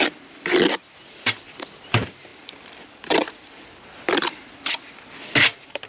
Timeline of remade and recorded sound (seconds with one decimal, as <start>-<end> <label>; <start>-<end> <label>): 0.0-5.9 remade